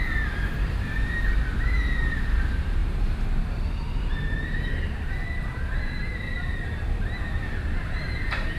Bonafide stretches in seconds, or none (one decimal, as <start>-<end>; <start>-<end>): none